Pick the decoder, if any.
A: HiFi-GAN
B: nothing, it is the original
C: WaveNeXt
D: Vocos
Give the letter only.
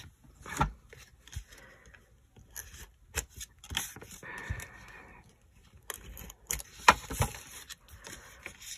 B